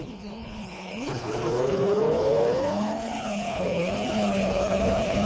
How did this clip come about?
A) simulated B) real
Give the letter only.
A